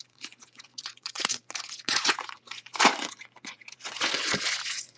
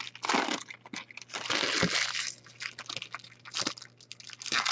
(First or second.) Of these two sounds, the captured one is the second